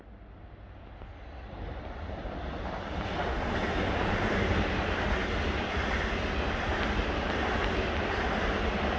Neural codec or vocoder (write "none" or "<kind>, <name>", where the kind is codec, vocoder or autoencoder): none